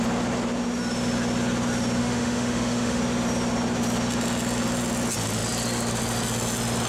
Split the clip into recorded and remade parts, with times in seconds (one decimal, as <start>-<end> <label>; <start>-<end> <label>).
0.0-2.0 recorded; 2.0-3.0 remade; 3.0-6.9 recorded